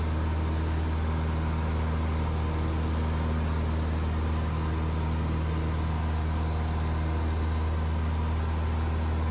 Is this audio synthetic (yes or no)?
no